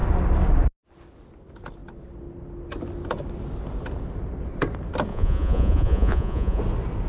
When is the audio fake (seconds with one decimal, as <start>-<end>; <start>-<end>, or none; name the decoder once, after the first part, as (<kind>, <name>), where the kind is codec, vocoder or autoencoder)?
5.1-6.6 (vocoder, Vocos)